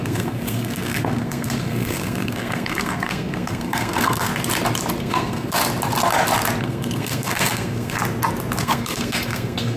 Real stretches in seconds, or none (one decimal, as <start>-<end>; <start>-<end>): 4.3-5.0; 5.6-6.6; 8.0-8.6